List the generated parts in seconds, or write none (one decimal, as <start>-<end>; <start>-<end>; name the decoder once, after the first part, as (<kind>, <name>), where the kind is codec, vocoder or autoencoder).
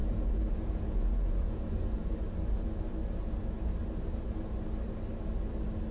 0.0-2.1 (vocoder, Vocos)